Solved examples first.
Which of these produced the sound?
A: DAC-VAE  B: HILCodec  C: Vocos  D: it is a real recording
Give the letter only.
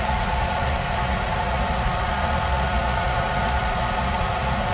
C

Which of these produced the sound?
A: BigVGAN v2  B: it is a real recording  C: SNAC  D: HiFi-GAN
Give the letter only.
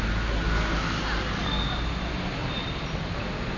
B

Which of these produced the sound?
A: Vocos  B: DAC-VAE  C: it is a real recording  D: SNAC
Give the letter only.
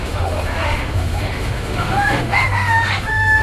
B